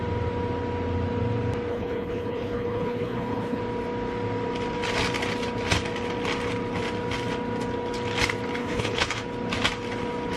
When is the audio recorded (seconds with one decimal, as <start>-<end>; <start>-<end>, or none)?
0.0-1.7; 3.6-8.6; 9.2-10.4